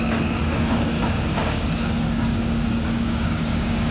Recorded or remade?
remade